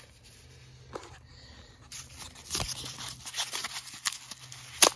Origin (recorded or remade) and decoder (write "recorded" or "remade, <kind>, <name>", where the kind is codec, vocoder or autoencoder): recorded